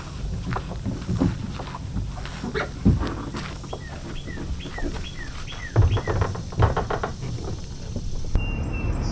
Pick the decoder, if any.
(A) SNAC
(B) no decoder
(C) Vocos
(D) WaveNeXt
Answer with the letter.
B